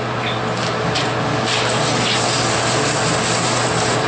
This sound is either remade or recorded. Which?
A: recorded